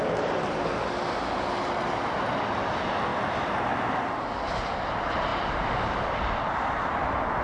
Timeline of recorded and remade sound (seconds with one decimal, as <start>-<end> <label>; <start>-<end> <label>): 0.0-5.3 recorded; 5.3-6.1 remade; 6.1-7.4 recorded